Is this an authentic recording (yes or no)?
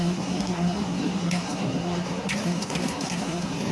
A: no